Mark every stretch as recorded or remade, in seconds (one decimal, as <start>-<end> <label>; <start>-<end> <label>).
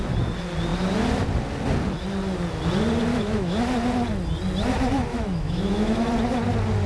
0.0-3.1 recorded; 3.1-3.6 remade; 3.6-5.1 recorded; 5.1-6.1 remade; 6.1-6.9 recorded